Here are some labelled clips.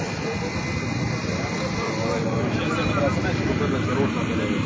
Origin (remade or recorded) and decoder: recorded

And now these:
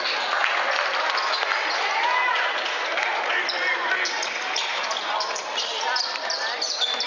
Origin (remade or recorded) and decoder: recorded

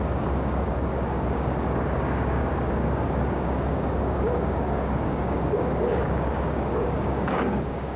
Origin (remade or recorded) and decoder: remade, codec, DAC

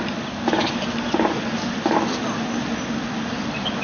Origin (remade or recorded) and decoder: recorded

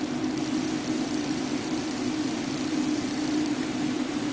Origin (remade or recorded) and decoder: recorded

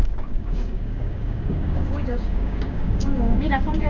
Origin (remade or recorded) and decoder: remade, codec, DAC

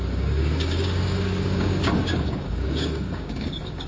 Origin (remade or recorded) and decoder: remade, codec, DAC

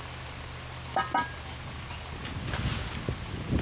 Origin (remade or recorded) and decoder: recorded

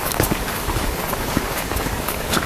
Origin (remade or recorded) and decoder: remade, codec, DAC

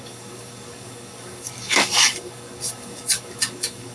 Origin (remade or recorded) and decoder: remade, codec, DAC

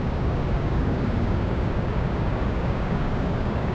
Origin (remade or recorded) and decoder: remade, codec, DAC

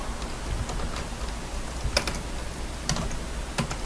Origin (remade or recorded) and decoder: recorded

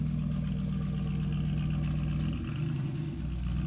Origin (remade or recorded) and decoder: recorded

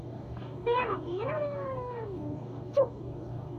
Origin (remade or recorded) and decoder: remade, codec, DAC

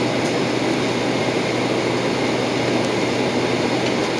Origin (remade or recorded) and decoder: recorded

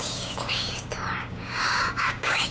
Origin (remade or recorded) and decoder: remade, codec, DAC